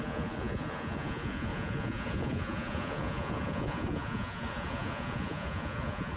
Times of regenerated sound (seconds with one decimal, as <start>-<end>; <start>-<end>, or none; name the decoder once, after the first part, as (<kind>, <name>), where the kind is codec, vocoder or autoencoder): 0.0-6.2 (vocoder, Vocos)